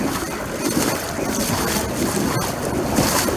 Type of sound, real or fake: real